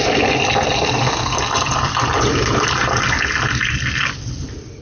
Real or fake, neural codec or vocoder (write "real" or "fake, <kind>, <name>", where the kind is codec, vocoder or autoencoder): real